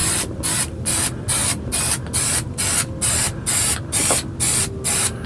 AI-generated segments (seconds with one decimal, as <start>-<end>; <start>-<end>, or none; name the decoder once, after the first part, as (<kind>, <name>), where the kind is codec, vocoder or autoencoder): 0.0-0.9 (vocoder, BigVGAN v2)